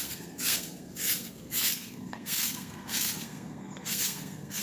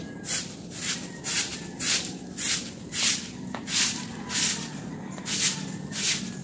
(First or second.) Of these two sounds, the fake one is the first